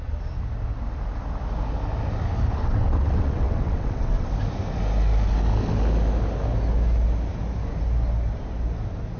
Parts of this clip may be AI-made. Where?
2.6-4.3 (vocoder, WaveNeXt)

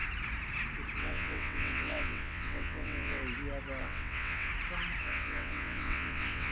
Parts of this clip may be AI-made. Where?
1.0-3.2 (vocoder, WaveNeXt); 3.8-4.5; 5.0-6.5